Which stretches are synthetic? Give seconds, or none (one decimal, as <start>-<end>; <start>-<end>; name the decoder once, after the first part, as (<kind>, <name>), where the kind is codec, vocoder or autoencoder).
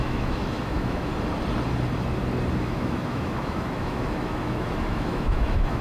0.0-1.1 (autoencoder, DAC-VAE); 2.6-5.8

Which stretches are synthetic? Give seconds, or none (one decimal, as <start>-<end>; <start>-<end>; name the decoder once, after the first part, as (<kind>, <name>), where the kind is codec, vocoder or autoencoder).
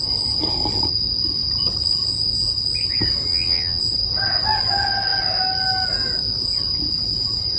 3.3-3.8 (vocoder, WaveNeXt)